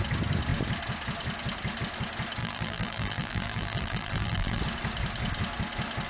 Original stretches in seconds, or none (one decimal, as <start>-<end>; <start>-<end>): 0.0-2.4; 4.6-6.1